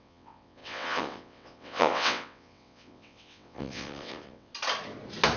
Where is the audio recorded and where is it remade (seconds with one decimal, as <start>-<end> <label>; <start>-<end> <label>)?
0.0-4.5 remade; 4.5-5.4 recorded